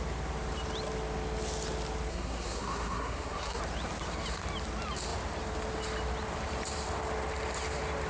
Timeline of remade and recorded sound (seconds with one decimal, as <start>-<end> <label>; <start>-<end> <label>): 0.0-2.1 recorded; 2.1-3.6 remade; 3.6-8.1 recorded